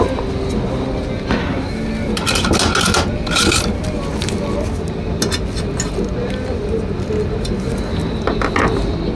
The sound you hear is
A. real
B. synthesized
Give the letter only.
A